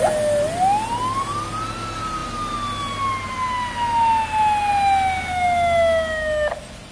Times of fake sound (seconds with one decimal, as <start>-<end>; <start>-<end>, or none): none